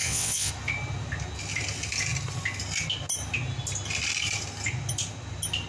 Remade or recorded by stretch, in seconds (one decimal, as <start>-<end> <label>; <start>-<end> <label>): 0.0-0.5 remade; 0.5-5.7 recorded

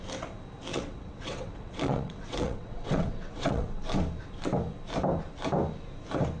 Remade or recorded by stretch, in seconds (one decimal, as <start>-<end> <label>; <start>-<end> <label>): 0.0-0.7 recorded; 0.7-3.8 remade; 3.8-6.4 recorded

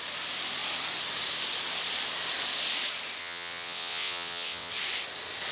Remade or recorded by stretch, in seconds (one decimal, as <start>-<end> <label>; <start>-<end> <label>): 0.0-3.2 recorded; 3.2-4.7 remade; 4.7-5.5 recorded

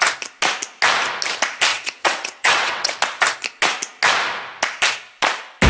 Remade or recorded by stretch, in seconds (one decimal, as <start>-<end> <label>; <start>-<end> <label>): 0.0-1.7 recorded; 1.7-2.9 remade; 2.9-5.7 recorded